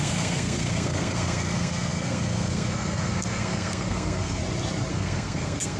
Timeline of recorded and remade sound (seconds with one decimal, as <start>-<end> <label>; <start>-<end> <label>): 0.0-4.4 remade; 4.4-4.9 recorded; 4.9-5.8 remade